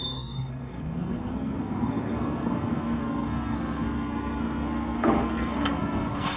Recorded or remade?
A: remade